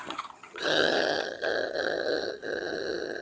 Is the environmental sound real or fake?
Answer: fake